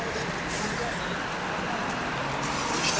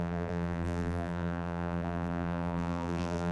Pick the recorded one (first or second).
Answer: first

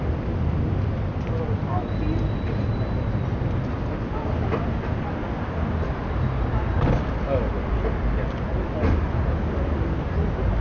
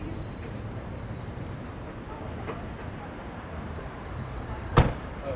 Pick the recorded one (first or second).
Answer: first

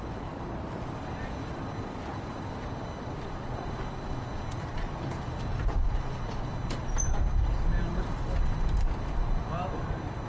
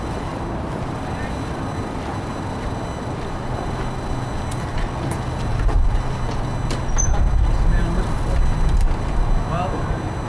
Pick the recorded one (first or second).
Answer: second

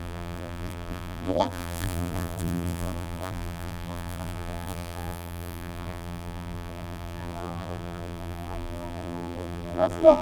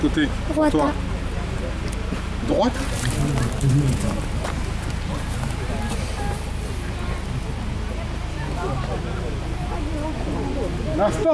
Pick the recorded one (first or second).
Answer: second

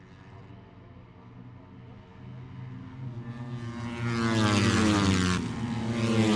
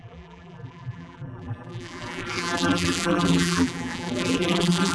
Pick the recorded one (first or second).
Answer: first